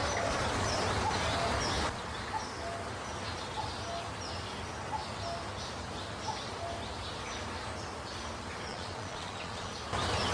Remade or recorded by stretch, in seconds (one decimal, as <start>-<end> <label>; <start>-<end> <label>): 0.0-8.7 recorded; 8.7-9.7 remade; 9.7-10.3 recorded